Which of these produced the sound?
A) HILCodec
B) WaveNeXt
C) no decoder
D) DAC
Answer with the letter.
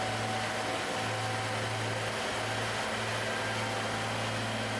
C